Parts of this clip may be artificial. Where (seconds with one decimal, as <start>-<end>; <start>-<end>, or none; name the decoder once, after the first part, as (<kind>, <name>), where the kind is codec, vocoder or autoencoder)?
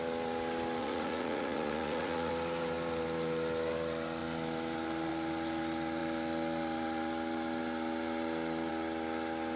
0.8-2.3 (vocoder, Vocos)